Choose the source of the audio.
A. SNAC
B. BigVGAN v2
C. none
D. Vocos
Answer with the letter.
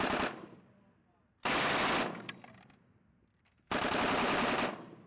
C